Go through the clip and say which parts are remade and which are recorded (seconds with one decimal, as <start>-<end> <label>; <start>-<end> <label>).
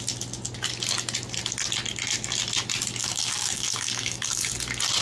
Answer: 0.0-3.0 recorded; 3.0-4.5 remade; 4.5-5.0 recorded